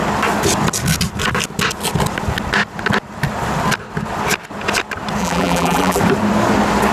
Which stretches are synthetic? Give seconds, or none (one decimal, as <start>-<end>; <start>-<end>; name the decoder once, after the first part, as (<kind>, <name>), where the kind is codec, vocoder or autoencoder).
5.2-6.0 (vocoder, BigVGAN v2)